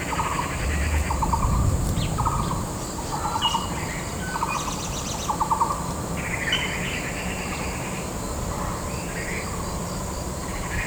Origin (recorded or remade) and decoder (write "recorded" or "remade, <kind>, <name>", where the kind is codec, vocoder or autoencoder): recorded